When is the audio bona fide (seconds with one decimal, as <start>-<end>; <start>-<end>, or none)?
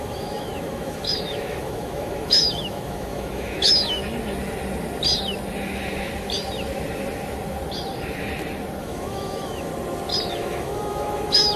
4.0-8.8; 9.7-10.3